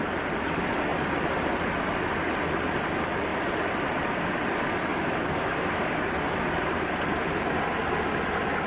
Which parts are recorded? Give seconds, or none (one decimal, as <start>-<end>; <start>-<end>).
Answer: 0.0-4.9; 6.3-8.7